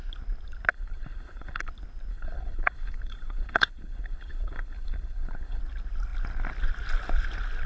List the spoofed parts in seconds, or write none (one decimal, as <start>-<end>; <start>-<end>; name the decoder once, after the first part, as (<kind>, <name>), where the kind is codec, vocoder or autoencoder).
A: 0.7-1.7 (codec, HILCodec); 2.1-5.6